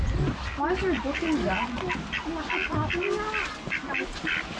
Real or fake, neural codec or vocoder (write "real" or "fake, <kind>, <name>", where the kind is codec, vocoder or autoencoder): real